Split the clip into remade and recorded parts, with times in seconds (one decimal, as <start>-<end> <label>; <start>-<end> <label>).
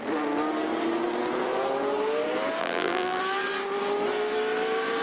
0.0-2.6 recorded; 2.6-3.2 remade; 3.2-5.0 recorded